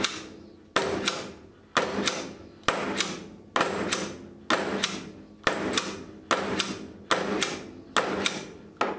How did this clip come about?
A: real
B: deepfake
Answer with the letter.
A